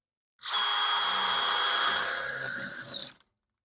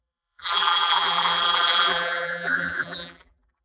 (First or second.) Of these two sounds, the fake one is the second